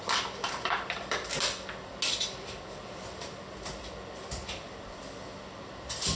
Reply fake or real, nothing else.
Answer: real